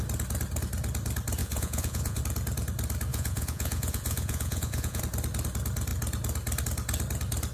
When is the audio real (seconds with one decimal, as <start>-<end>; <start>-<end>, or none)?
0.0-1.4; 2.2-3.1; 5.0-7.5